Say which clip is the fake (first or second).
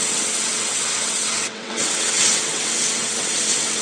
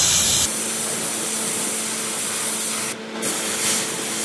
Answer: first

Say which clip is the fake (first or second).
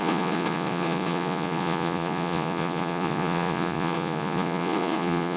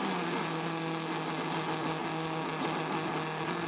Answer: first